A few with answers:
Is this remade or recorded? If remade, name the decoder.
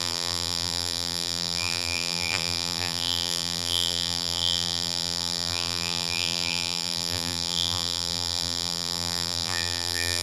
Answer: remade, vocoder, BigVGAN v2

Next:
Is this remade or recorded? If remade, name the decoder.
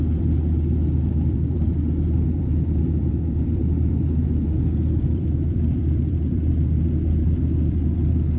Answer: remade, vocoder, BigVGAN v2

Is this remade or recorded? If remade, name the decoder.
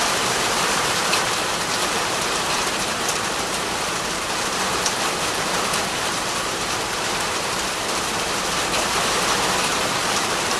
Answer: remade, vocoder, BigVGAN v2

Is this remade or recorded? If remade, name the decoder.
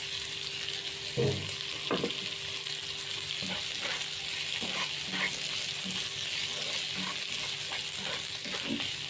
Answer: recorded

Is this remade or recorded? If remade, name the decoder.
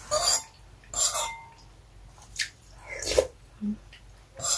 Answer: recorded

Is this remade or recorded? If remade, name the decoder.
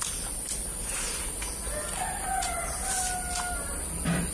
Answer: recorded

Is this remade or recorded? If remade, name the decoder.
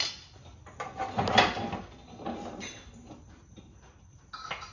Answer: recorded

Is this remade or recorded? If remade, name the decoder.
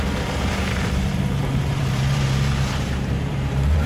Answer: remade, vocoder, BigVGAN v2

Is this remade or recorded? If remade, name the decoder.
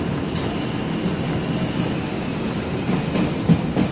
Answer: recorded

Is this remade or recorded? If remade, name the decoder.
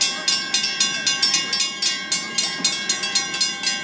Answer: recorded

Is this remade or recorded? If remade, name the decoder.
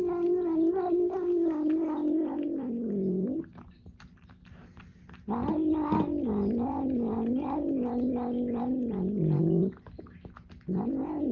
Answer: recorded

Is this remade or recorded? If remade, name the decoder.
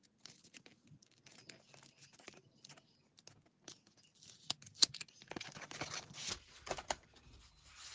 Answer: recorded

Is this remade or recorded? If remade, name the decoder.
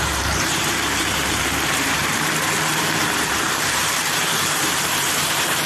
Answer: remade, vocoder, BigVGAN v2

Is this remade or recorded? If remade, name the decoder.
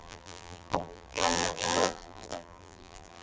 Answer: remade, vocoder, BigVGAN v2